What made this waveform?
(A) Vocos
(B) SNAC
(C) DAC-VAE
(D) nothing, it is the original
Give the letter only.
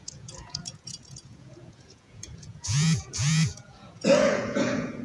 A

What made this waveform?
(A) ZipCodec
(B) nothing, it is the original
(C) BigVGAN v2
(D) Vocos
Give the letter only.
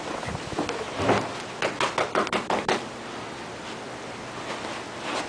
B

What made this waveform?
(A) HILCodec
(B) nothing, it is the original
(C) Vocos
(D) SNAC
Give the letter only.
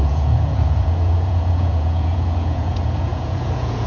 C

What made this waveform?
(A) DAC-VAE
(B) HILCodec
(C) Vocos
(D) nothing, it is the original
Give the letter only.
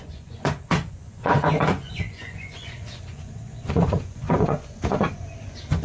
C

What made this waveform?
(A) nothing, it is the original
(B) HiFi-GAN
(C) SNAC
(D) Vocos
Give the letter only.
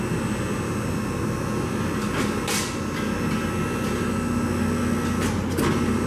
A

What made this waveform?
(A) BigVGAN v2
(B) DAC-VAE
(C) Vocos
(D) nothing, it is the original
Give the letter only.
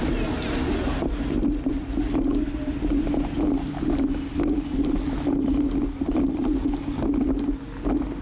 D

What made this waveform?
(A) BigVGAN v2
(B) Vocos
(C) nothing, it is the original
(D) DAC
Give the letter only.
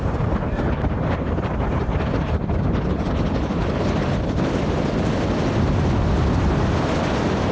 C